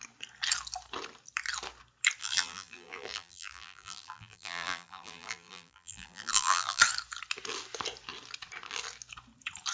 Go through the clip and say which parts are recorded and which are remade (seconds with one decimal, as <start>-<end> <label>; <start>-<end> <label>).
0.0-2.2 recorded; 2.2-6.8 remade; 6.8-9.7 recorded